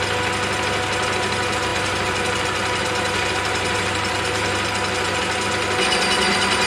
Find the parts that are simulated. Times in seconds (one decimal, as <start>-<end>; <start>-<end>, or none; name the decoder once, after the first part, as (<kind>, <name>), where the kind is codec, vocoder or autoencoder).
1.7-5.2 (vocoder, BigVGAN v2)